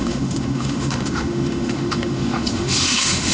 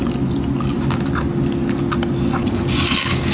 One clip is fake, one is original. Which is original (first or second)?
second